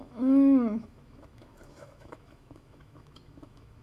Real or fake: fake